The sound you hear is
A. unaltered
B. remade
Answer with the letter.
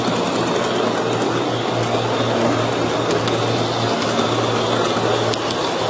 A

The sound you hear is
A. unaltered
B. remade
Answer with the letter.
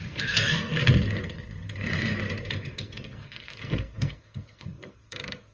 B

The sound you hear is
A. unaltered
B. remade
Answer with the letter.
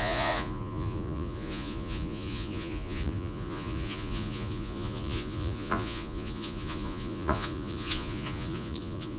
B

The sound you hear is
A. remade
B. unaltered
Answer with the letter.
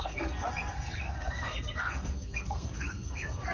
A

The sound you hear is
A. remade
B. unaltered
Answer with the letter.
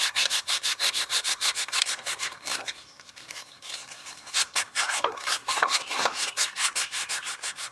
A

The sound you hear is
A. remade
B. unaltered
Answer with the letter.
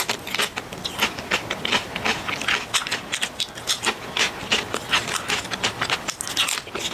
B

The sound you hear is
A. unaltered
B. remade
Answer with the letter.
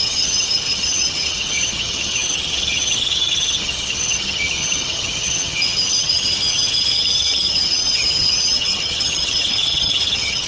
B